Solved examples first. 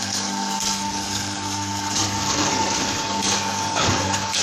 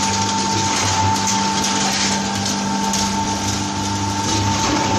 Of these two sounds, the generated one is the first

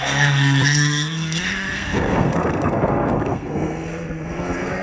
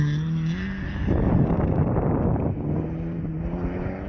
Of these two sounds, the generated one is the first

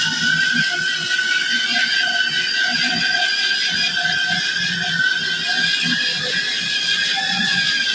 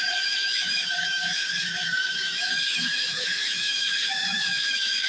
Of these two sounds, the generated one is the second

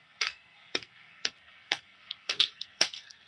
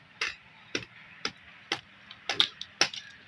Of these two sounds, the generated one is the first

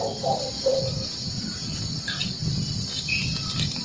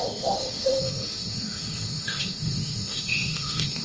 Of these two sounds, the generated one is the second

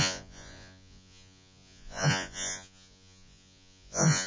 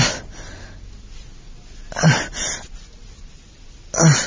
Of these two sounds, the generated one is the first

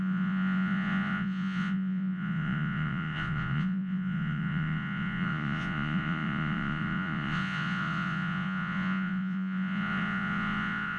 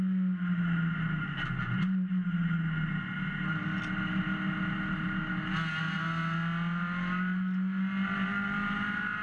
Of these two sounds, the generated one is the first